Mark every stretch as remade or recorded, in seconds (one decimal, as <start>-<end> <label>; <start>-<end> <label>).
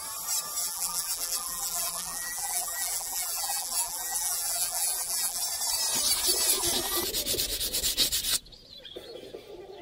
0.0-0.6 recorded; 0.6-5.4 remade; 5.4-9.8 recorded